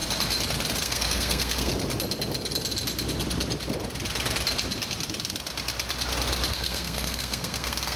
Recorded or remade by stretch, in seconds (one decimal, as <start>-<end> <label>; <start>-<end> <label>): 0.0-0.8 recorded; 0.8-1.7 remade; 1.7-6.5 recorded; 6.5-8.0 remade